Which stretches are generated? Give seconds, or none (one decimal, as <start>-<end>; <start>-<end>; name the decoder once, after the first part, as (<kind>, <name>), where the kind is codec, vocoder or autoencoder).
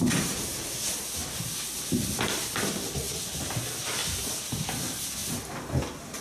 4.0-4.7 (vocoder, BigVGAN v2)